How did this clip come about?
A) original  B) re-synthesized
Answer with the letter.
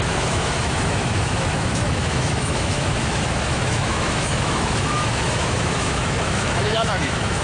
B